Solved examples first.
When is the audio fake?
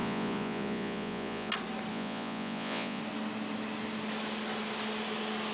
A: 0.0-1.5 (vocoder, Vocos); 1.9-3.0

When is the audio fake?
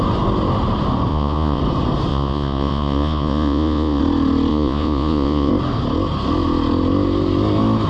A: 1.1-1.6 (vocoder, Vocos); 2.1-4.0; 4.5-5.5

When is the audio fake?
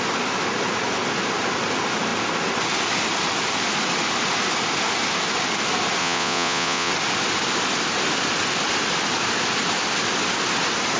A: 6.0-6.9 (vocoder, Vocos)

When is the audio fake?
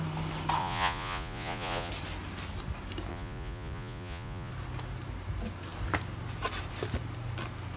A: 0.6-1.9 (vocoder, Vocos); 3.1-4.5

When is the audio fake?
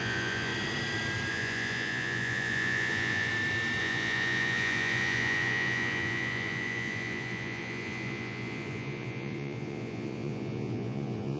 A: 0.0-0.5 (vocoder, Vocos); 1.3-3.3; 3.8-11.4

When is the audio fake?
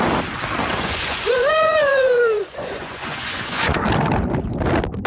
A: 0.7-3.8 (vocoder, Vocos)